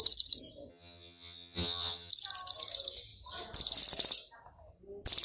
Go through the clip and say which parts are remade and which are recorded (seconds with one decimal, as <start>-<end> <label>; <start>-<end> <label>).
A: 0.0-0.7 recorded; 0.7-2.1 remade; 2.1-5.2 recorded